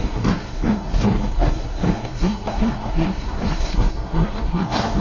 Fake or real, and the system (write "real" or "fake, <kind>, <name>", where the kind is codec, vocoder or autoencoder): fake, codec, SNAC